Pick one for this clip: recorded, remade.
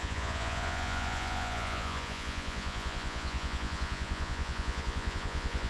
remade